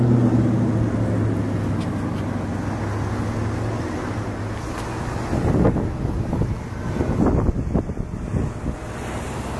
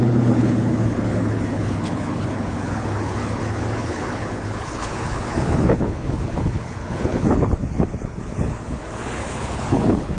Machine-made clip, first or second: second